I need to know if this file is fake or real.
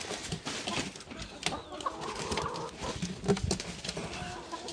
real